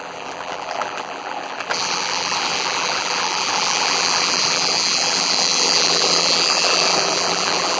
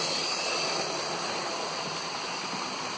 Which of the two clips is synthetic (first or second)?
first